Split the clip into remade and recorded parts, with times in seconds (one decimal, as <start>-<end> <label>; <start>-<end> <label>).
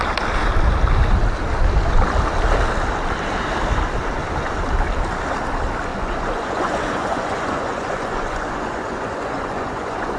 0.0-5.9 recorded; 5.9-10.2 remade